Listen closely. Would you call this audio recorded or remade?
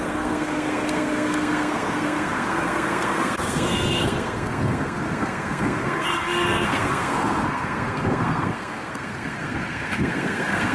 remade